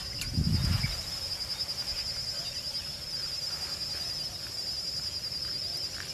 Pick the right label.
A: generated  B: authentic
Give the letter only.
B